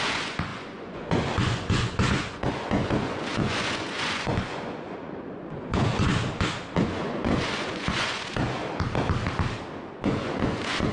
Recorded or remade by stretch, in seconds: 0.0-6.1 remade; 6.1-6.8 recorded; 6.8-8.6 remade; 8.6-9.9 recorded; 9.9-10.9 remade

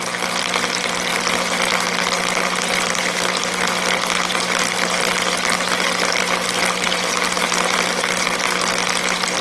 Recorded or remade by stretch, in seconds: 0.0-9.4 recorded